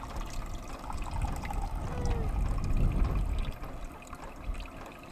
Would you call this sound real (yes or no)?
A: yes